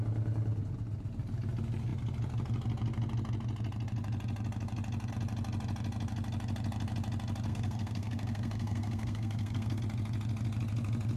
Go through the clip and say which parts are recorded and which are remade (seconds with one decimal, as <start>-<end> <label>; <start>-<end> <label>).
0.0-7.5 recorded; 7.5-9.8 remade; 9.8-11.2 recorded